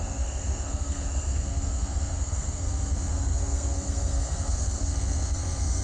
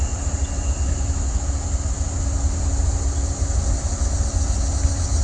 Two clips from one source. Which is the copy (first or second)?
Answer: first